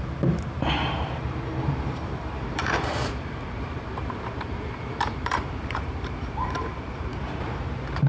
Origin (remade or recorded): remade